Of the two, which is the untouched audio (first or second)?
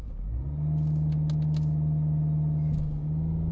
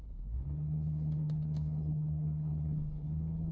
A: first